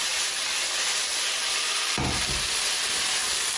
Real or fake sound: real